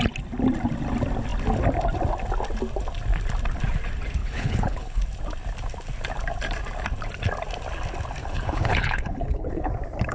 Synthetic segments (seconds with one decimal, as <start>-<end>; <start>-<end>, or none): 4.2-5.0; 8.2-9.7